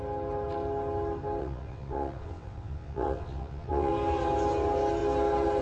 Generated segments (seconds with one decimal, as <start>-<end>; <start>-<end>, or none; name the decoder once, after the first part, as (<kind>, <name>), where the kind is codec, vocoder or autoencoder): 1.4-3.9 (vocoder, WaveNeXt)